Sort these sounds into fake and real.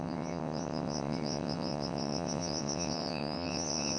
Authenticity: fake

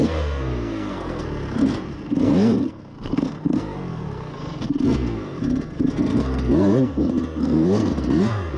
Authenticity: fake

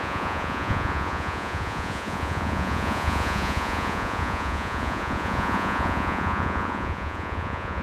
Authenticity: fake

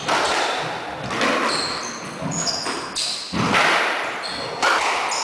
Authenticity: real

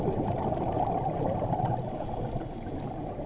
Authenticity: real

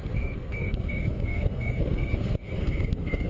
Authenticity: fake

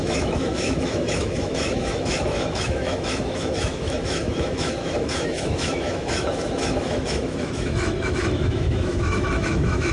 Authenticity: fake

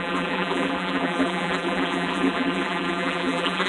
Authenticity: fake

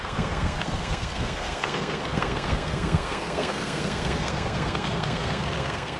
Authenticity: fake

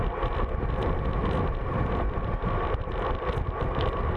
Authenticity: real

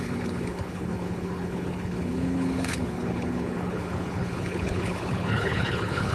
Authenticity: fake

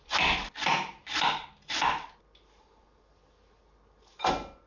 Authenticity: real